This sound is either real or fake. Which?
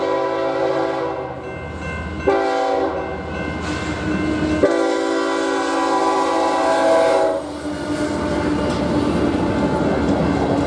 real